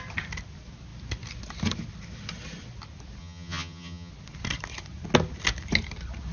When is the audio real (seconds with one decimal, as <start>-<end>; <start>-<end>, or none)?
0.0-3.2; 4.1-6.3